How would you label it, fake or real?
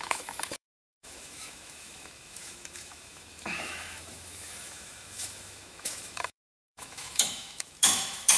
fake